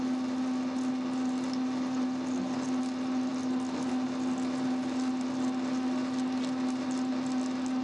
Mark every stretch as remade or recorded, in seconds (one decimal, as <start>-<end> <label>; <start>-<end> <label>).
0.0-7.8 recorded